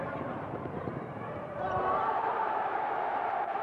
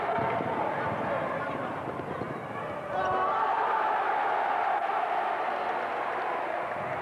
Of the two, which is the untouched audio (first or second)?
second